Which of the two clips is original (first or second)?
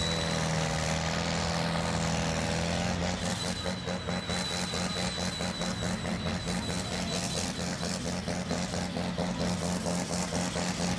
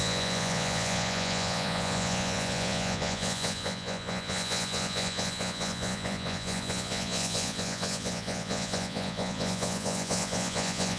first